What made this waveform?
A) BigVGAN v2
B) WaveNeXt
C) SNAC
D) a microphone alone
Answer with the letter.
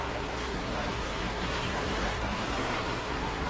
C